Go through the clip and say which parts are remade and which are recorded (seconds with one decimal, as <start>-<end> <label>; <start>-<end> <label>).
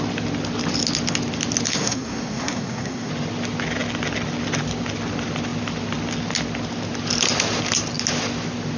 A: 0.0-1.7 recorded; 1.7-3.1 remade; 3.1-8.8 recorded